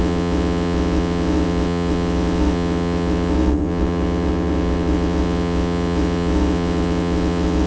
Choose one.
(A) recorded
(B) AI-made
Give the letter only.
B